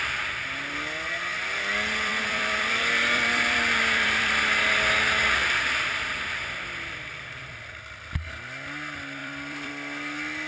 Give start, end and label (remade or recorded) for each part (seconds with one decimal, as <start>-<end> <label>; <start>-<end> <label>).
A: 0.0-1.3 recorded; 1.3-4.4 remade; 4.4-5.4 recorded; 5.4-7.7 remade; 7.7-9.2 recorded; 9.2-9.7 remade; 9.7-10.5 recorded